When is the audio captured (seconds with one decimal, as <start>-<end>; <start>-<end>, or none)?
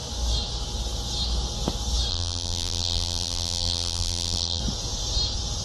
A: 0.0-2.1; 4.6-5.6